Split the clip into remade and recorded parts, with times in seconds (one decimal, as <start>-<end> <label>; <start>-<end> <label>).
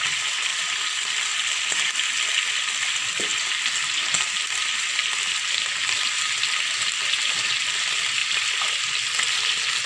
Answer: 0.0-9.9 recorded